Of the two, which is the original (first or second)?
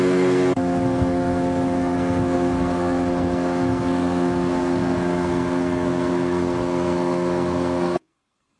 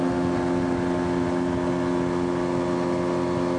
second